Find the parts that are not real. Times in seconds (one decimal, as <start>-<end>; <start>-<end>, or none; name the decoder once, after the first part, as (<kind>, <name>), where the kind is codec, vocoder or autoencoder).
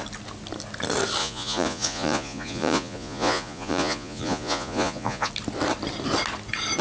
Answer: 1.2-5.3 (vocoder, Vocos)